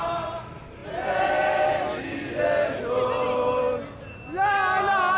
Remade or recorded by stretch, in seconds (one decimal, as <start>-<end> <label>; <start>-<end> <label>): 0.0-5.2 recorded